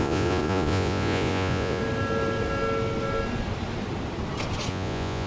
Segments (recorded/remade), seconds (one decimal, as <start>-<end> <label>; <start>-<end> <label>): 0.0-1.8 remade; 1.8-4.7 recorded; 4.7-5.3 remade